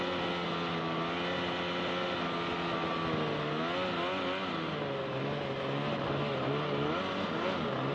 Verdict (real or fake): real